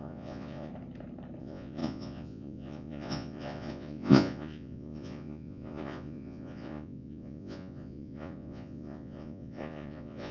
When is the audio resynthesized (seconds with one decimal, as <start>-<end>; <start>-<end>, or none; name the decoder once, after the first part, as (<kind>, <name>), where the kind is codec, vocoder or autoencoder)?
0.0-0.7 (vocoder, Vocos); 1.4-10.3